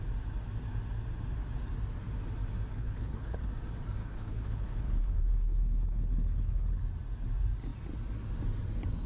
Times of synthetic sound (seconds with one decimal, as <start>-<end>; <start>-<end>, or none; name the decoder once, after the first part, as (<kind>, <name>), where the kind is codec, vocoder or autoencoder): 2.7-3.5 (codec, HILCodec); 4.0-6.8